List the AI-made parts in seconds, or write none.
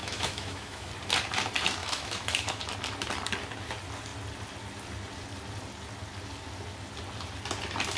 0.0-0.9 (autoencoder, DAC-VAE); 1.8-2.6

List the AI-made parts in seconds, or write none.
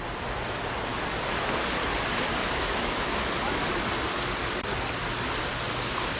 2.4-3.6 (autoencoder, DAC-VAE)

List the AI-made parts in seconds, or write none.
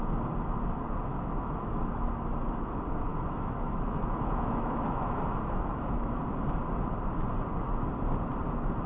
1.1-1.7 (autoencoder, DAC-VAE); 3.1-6.2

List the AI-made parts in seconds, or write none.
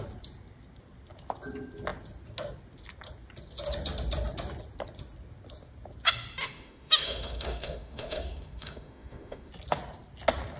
6.4-9.5 (autoencoder, DAC-VAE)